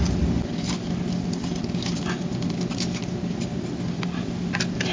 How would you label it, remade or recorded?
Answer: recorded